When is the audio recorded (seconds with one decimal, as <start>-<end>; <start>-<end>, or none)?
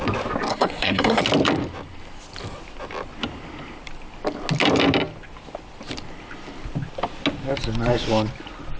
0.0-0.5; 1.2-8.8